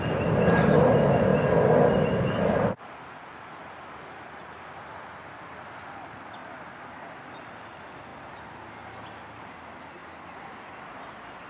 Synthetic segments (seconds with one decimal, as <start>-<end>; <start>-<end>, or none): none